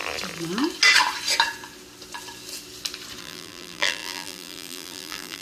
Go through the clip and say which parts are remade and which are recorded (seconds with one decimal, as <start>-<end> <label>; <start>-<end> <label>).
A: 0.0-3.2 recorded; 3.2-5.4 remade